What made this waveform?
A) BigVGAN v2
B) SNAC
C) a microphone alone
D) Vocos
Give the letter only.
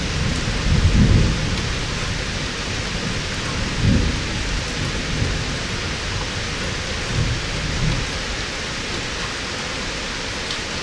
C